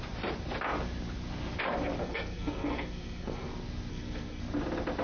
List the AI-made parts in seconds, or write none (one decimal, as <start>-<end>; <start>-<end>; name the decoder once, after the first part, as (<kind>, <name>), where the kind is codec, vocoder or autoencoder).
2.0-3.5 (codec, SNAC); 3.9-4.4